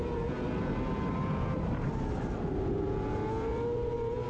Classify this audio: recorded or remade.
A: recorded